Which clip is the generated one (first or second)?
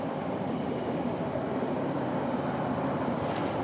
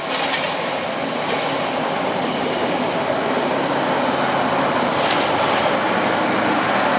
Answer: first